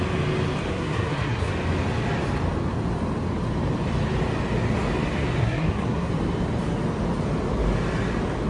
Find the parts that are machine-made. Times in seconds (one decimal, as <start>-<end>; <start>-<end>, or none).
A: 0.7-1.5; 5.4-6.1